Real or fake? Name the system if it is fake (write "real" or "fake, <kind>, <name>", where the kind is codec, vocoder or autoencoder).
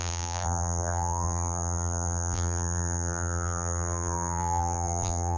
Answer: fake, vocoder, BigVGAN v2